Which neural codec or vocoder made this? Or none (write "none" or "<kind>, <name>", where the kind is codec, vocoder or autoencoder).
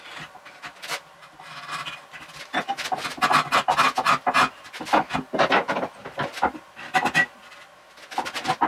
none